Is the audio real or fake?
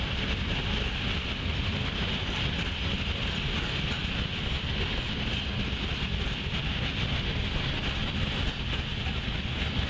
real